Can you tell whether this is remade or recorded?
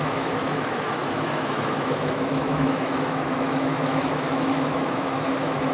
remade